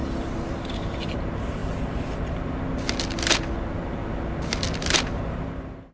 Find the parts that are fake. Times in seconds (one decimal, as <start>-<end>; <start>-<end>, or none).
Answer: none